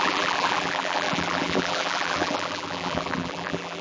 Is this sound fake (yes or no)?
yes